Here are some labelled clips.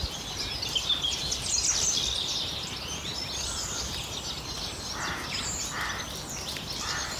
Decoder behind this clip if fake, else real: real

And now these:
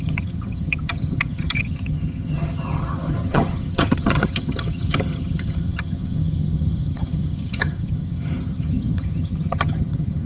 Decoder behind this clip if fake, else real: fake, vocoder, HiFi-GAN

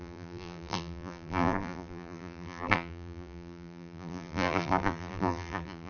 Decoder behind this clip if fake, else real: fake, vocoder, BigVGAN v2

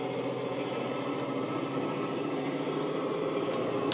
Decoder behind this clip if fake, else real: fake, vocoder, BigVGAN v2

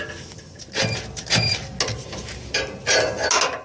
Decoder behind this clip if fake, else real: real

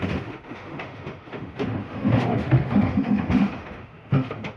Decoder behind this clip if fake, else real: fake, autoencoder, DAC-VAE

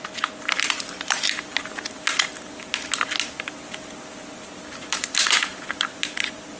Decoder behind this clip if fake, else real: real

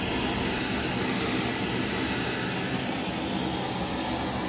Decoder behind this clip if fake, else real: real